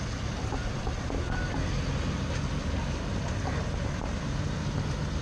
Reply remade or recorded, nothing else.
recorded